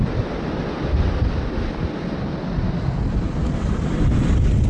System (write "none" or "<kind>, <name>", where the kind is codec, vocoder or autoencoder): none